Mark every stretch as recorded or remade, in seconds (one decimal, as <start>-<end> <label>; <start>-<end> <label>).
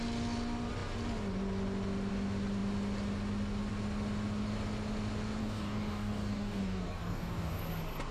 0.0-5.4 recorded; 5.4-7.6 remade; 7.6-8.1 recorded